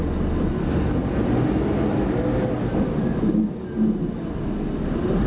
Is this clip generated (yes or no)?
no